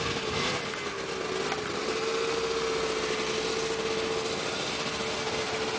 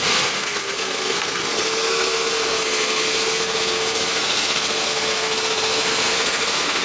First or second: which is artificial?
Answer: second